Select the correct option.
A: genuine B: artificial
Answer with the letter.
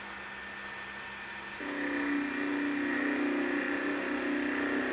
A